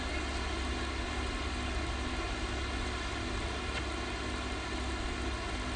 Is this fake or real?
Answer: real